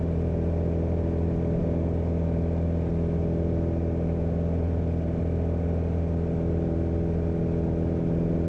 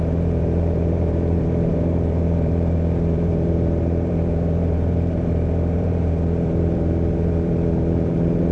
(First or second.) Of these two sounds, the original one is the first